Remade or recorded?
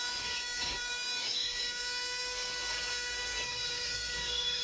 remade